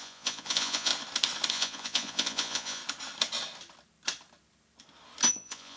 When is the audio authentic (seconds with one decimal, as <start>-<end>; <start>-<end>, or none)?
0.9-1.5; 2.8-5.3